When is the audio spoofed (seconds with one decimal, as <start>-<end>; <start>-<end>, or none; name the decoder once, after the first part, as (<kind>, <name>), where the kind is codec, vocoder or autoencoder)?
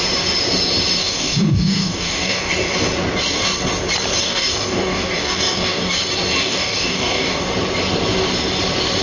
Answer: 1.0-2.5 (codec, DAC); 4.2-5.9; 6.4-7.4